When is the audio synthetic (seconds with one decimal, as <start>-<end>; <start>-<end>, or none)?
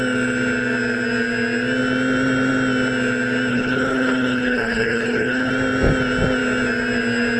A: 3.5-5.5